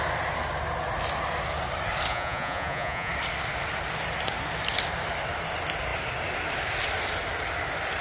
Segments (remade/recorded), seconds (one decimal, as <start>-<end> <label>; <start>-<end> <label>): 0.0-2.1 recorded; 2.1-3.1 remade; 3.1-8.0 recorded